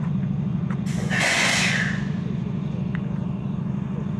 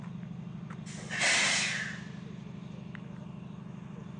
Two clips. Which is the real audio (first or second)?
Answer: second